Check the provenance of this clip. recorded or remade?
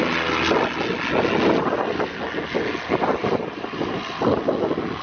recorded